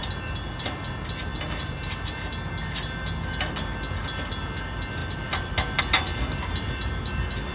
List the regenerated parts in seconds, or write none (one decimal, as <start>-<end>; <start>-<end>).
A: none